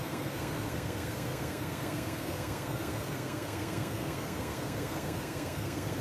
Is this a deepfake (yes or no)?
yes